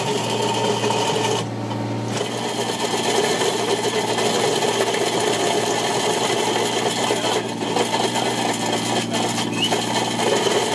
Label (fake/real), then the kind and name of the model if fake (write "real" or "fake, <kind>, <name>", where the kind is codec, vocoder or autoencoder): real